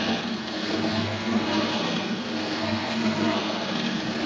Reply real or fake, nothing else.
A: fake